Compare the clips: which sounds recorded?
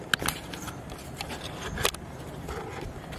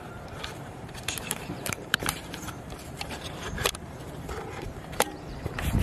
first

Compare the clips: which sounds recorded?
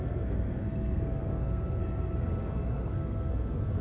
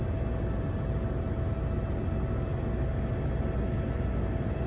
second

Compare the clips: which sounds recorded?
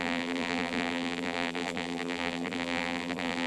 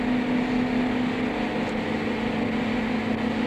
second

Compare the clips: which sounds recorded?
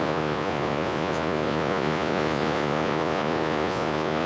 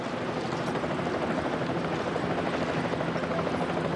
second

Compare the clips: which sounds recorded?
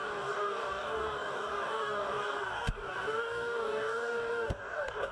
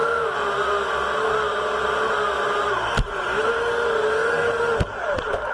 second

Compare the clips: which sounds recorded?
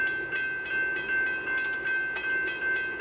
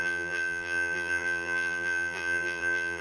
first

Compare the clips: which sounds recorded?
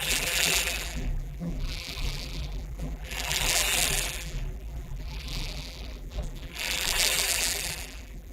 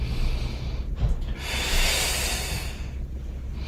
second